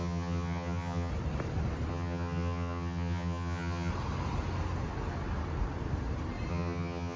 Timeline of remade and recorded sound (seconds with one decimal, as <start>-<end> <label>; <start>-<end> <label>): 0.0-1.1 remade; 1.1-1.9 recorded; 1.9-3.9 remade; 3.9-6.5 recorded; 6.5-7.2 remade